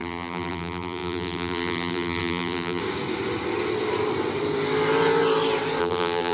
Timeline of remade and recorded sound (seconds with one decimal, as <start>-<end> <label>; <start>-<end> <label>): 0.0-2.8 remade; 2.8-5.8 recorded; 5.8-6.3 remade